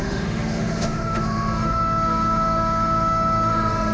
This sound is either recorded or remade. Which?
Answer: remade